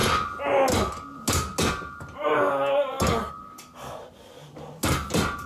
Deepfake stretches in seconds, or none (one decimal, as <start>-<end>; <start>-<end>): none

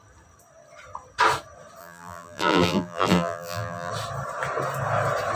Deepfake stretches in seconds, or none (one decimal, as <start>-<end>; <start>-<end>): 1.8-3.9